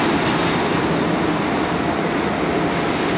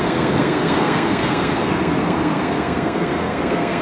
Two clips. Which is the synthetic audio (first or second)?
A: second